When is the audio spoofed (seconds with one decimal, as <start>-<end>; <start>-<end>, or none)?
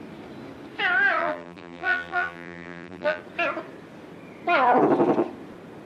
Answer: 1.2-3.2